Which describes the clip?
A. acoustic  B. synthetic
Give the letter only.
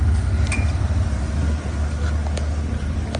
A